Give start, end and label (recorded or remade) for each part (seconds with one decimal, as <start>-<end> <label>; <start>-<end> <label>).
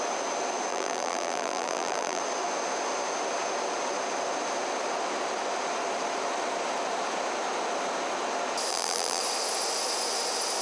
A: 0.0-0.7 recorded; 0.7-2.2 remade; 2.2-8.7 recorded; 8.7-9.2 remade; 9.2-10.6 recorded